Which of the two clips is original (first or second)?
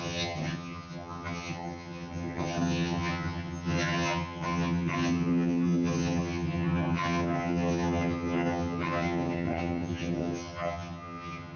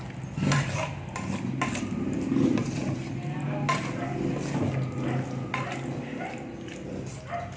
second